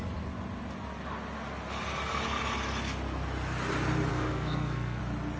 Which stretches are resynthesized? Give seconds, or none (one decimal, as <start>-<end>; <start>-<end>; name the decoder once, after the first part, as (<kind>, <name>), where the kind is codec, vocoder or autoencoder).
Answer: 4.1-5.0 (codec, SNAC)